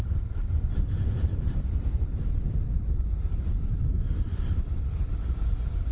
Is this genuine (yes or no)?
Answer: no